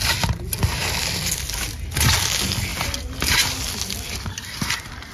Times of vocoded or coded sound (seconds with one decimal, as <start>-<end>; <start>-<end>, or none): 0.7-1.7